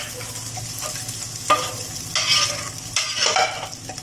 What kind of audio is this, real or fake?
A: real